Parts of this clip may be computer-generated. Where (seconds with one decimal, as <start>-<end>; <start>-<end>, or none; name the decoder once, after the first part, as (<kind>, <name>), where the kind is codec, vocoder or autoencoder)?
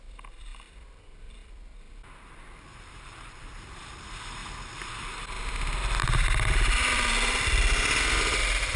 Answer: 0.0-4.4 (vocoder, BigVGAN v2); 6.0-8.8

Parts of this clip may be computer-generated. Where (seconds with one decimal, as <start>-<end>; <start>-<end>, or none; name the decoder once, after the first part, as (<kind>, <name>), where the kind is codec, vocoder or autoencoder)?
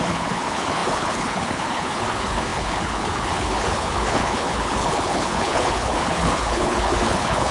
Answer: 0.0-7.5 (codec, HILCodec)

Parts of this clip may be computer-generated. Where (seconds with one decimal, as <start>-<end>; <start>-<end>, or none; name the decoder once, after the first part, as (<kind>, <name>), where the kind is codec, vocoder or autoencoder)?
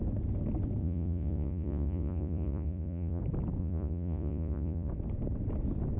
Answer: 0.8-3.2 (vocoder, Vocos); 3.6-4.9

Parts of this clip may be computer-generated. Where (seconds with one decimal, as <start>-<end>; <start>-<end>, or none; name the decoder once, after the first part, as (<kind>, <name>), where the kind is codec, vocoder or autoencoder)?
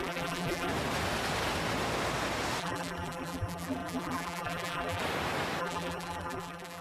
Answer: 0.0-0.7 (vocoder, BigVGAN v2); 2.6-5.0; 5.6-6.8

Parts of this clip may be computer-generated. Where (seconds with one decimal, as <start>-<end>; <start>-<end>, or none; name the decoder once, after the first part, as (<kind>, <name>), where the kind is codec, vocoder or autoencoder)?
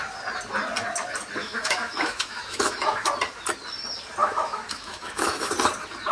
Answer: 1.4-3.1 (autoencoder, DAC-VAE); 4.2-5.5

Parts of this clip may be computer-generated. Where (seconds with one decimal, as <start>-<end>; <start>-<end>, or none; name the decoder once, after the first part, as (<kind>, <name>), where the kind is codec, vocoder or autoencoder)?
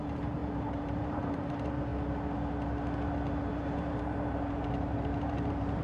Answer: 0.0-1.9 (vocoder, BigVGAN v2); 3.5-5.8